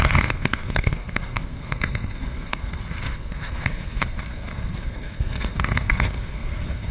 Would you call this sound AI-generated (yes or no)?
yes